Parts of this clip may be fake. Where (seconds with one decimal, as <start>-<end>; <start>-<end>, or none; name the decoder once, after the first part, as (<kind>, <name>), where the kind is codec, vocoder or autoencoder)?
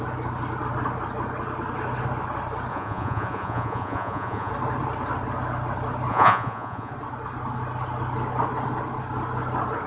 2.7-4.5 (vocoder, Vocos); 6.1-6.9